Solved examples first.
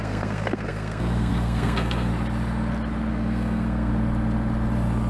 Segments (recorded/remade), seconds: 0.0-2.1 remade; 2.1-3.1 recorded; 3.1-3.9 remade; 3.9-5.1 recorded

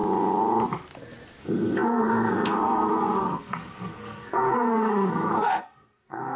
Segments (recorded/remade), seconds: 0.0-1.4 recorded; 1.4-6.4 remade

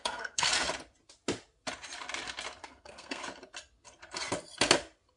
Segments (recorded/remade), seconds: 0.0-0.5 remade; 0.5-2.6 recorded; 2.6-3.2 remade; 3.2-5.2 recorded

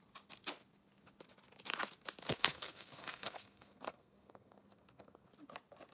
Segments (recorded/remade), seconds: 0.0-2.3 recorded; 2.3-5.3 remade; 5.3-5.9 recorded

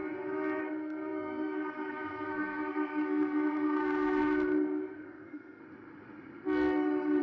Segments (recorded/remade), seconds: 0.0-0.6 recorded; 0.6-5.6 remade; 5.6-7.2 recorded

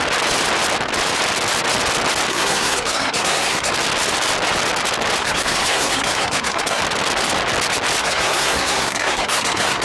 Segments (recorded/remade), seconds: 0.0-2.3 recorded; 2.3-3.7 remade; 3.7-5.2 recorded; 5.2-6.8 remade; 6.8-8.0 recorded; 8.0-9.8 remade